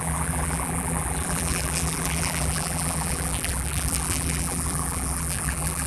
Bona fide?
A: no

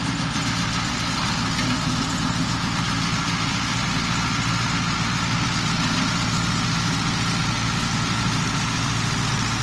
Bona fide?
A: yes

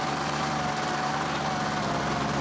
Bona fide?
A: yes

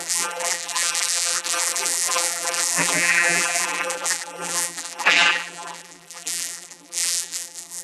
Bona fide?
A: no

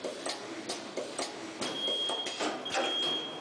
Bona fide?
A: yes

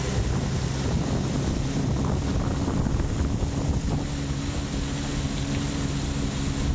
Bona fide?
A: yes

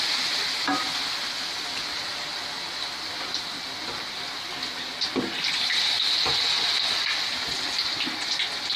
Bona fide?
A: yes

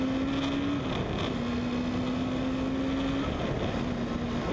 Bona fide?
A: yes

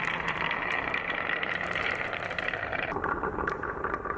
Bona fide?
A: no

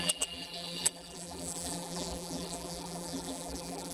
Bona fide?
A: no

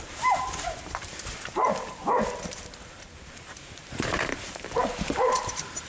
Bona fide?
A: no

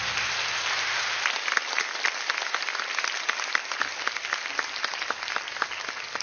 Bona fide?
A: no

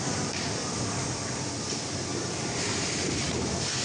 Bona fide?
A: no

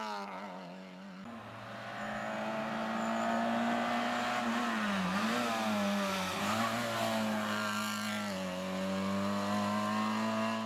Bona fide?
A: yes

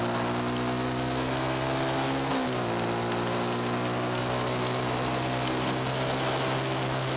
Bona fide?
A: yes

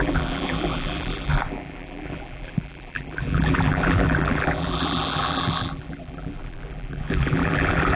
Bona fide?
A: no